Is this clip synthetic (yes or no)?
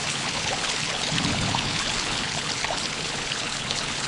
yes